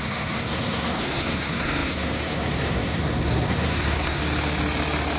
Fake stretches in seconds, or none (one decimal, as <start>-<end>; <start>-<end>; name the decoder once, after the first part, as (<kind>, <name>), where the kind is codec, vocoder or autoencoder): 0.0-4.2 (codec, SNAC)